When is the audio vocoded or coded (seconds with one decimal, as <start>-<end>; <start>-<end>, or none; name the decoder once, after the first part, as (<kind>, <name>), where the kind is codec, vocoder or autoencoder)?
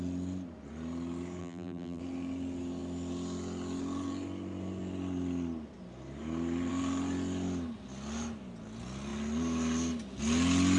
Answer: 1.4-2.0 (vocoder, BigVGAN v2)